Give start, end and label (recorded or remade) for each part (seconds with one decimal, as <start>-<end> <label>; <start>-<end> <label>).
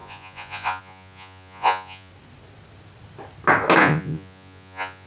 0.0-2.1 remade; 2.1-3.8 recorded; 3.8-5.1 remade